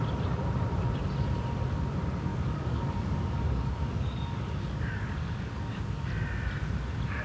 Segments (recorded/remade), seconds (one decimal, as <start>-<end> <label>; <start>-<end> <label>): 0.0-2.3 recorded; 2.3-6.0 remade; 6.0-7.2 recorded